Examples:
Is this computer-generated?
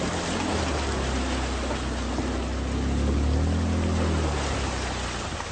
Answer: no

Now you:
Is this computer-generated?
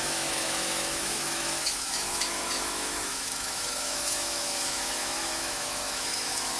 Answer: yes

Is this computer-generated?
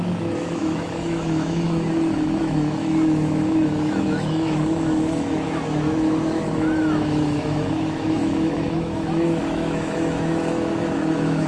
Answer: yes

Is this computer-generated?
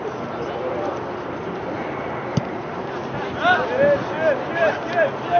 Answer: no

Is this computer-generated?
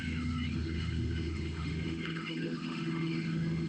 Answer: yes